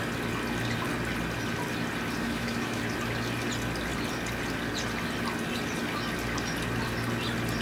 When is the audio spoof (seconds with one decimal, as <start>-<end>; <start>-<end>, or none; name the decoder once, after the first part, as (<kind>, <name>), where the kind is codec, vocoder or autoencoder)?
2.2-2.8 (autoencoder, DAC-VAE)